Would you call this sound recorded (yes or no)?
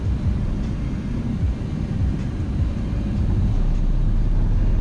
yes